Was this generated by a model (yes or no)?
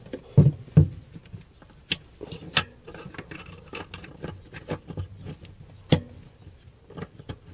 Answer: no